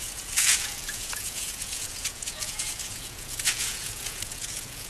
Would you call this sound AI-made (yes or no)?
yes